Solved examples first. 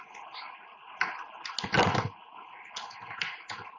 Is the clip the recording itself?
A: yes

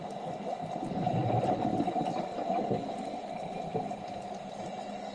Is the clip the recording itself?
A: yes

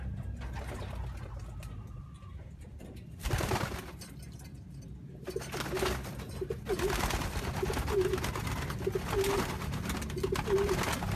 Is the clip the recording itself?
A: yes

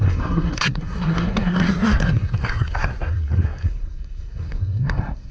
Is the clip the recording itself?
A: no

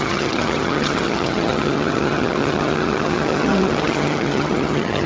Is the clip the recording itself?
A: no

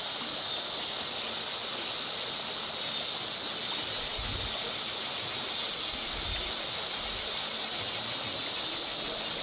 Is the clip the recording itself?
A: yes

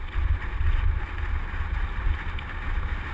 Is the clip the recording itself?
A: yes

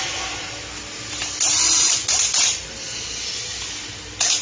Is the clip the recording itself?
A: yes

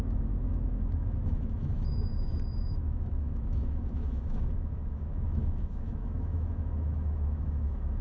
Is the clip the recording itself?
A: no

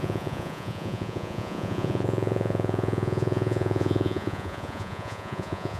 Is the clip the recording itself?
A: no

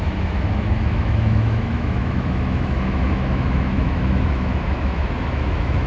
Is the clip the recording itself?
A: no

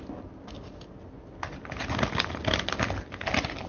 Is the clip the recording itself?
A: yes